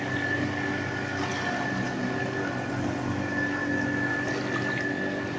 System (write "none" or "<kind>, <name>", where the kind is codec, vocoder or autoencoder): none